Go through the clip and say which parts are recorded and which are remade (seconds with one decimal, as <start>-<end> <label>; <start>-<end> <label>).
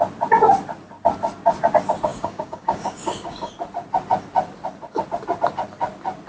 0.0-2.1 recorded; 2.1-3.5 remade; 3.5-6.3 recorded